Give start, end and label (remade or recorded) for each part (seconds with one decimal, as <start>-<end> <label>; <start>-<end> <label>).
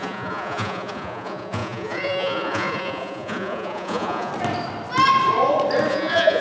0.0-4.3 remade; 4.3-5.9 recorded; 5.9-6.4 remade